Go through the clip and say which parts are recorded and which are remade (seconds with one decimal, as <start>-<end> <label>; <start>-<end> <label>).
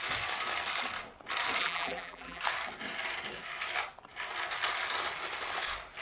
0.0-1.6 recorded; 1.6-2.4 remade; 2.4-6.0 recorded